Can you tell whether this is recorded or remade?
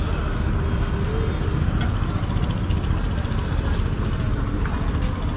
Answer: recorded